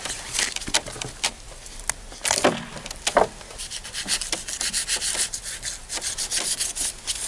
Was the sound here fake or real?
real